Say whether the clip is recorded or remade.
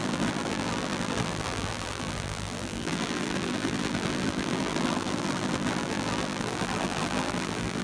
remade